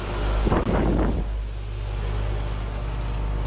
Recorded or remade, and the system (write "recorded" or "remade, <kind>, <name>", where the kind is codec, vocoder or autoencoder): recorded